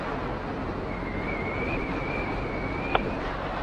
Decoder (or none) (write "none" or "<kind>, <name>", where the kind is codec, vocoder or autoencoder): none